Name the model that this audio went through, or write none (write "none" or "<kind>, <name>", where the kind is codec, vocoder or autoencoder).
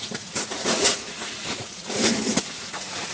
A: vocoder, Vocos